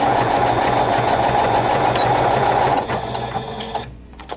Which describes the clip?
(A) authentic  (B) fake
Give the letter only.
B